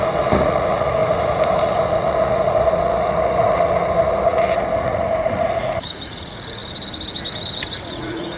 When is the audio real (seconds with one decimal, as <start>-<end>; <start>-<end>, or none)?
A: 6.6-7.9